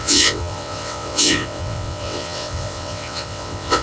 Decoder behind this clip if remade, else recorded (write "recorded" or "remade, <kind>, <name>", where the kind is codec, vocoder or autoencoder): remade, vocoder, WaveNeXt